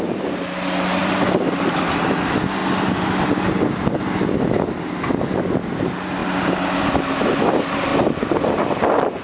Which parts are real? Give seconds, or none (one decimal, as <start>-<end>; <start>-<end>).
0.0-7.9; 8.7-9.2